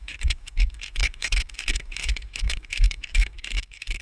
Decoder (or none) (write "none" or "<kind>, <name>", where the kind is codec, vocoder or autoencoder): codec, DAC